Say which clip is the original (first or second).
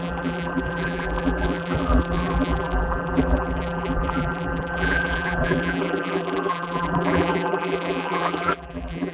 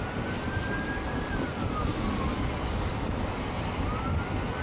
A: second